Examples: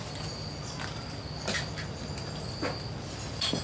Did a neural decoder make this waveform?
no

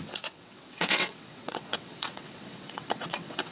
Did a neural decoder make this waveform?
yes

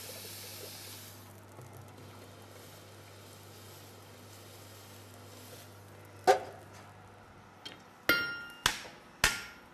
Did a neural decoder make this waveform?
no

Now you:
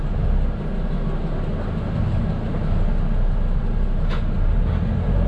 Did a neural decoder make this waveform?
no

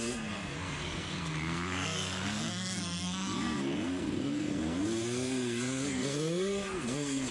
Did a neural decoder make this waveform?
yes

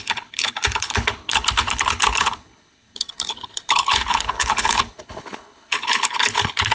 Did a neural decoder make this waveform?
yes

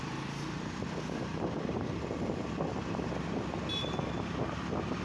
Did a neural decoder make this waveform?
no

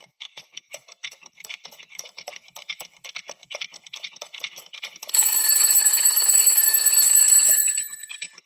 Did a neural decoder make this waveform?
yes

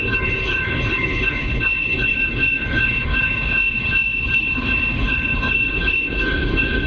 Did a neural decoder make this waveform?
yes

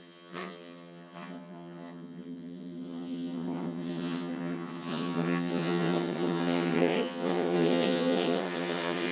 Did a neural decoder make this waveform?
yes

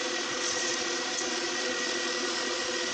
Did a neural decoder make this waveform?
yes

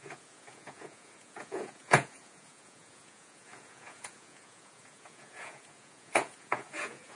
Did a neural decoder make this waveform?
yes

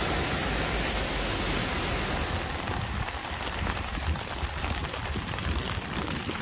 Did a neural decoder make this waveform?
no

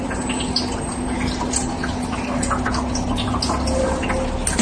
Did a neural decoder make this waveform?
no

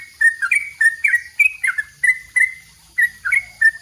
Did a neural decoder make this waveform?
no